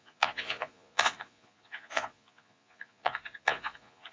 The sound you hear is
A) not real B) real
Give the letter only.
A